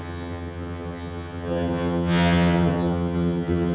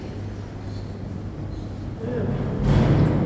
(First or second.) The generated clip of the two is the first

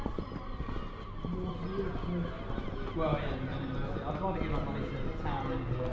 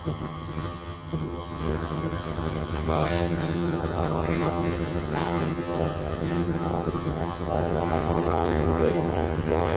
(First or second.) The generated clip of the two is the second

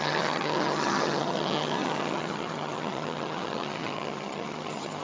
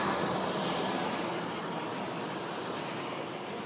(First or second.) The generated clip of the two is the first